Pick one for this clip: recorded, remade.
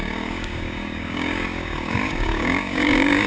remade